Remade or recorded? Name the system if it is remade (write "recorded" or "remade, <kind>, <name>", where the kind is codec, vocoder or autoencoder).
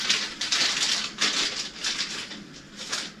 recorded